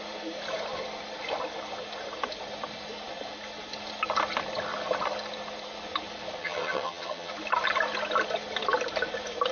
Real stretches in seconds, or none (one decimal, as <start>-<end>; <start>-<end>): 0.0-6.4; 7.3-9.5